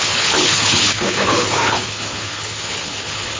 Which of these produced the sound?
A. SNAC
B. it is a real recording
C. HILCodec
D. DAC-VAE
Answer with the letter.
C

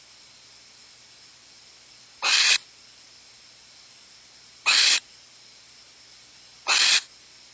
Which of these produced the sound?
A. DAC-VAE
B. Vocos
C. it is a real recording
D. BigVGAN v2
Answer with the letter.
D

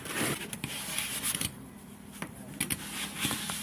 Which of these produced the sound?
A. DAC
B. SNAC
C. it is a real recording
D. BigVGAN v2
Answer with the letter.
C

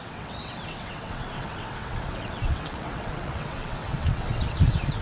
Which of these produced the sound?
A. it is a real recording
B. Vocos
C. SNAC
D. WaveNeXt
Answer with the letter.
D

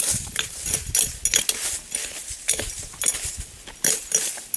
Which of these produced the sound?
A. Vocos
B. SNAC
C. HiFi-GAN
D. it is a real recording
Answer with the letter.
D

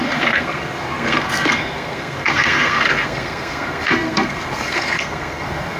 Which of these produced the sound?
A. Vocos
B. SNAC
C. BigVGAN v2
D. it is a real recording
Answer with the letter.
B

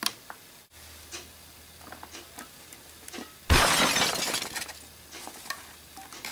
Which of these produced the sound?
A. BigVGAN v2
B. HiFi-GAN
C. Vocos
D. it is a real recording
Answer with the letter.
D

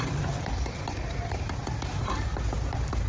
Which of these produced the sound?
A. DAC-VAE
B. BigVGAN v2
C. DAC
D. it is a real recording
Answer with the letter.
B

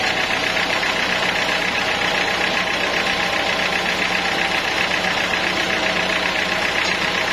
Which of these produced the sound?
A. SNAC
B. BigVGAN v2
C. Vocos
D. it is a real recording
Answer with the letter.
D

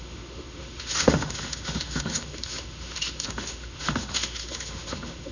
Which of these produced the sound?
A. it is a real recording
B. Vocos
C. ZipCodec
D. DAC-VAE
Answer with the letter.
D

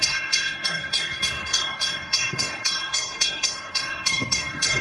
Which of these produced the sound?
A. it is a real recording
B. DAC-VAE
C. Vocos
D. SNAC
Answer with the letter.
D